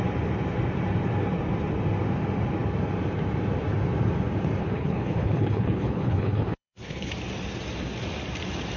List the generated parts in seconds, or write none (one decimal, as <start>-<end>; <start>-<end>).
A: 4.6-7.1